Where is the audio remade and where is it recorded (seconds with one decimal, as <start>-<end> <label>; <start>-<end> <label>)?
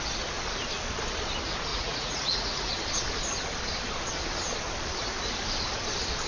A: 0.0-1.7 recorded; 1.7-2.7 remade; 2.7-6.3 recorded